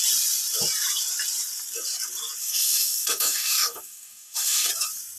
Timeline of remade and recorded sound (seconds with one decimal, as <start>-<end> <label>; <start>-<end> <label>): 0.0-2.4 recorded; 2.4-4.7 remade; 4.7-5.2 recorded